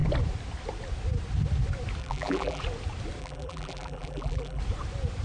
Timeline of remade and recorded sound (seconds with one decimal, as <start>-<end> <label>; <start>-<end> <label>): 0.0-2.0 recorded; 2.0-2.6 remade; 2.6-3.2 recorded; 3.2-4.6 remade; 4.6-5.2 recorded